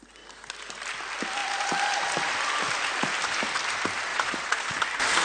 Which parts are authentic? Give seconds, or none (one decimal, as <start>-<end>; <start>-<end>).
0.0-4.1; 4.8-5.2